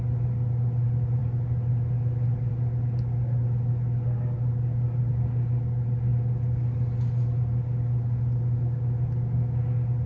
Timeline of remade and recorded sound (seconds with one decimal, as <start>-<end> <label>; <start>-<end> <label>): 0.0-10.1 recorded